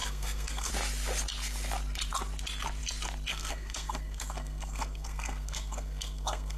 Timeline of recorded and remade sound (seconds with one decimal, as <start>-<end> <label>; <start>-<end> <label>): 0.0-0.7 remade; 0.7-3.3 recorded; 3.3-6.6 remade